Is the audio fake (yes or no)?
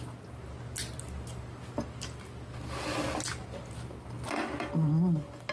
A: no